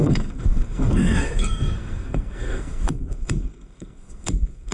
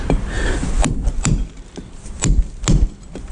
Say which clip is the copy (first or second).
first